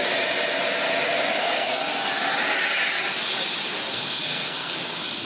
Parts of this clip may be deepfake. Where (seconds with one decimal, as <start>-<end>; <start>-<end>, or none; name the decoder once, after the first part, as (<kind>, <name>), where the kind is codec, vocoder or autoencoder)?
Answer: 1.4-1.8 (codec, SNAC); 3.9-5.3